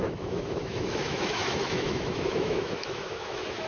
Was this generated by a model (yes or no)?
yes